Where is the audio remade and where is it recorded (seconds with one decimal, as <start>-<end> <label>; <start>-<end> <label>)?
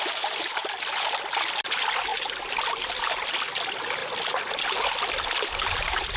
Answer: 0.0-6.2 recorded